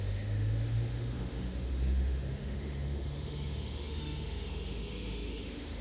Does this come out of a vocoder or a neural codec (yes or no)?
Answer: yes